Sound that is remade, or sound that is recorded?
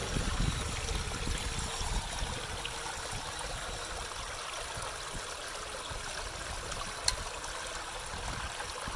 recorded